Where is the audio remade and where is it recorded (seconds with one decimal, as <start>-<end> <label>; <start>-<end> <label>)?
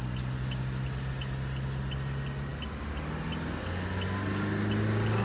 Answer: 0.0-5.2 recorded